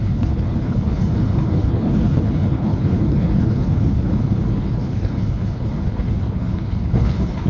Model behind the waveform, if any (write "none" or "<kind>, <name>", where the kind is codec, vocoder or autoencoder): codec, HILCodec